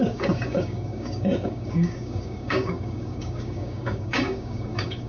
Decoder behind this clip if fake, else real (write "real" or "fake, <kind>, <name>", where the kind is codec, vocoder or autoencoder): fake, codec, DAC